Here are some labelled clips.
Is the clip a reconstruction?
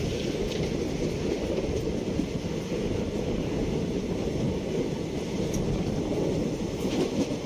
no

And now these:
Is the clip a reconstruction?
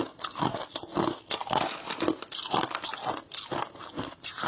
no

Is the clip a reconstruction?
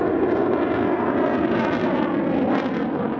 no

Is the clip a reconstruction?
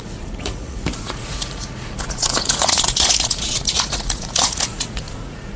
yes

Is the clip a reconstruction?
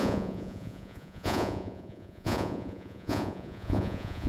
yes